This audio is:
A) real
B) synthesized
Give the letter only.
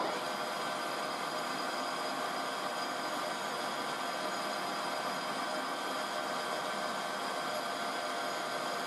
A